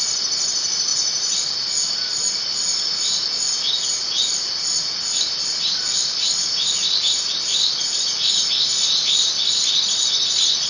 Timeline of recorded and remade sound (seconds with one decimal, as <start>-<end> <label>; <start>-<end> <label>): 0.0-10.7 recorded